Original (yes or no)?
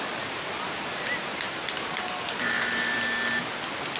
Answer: yes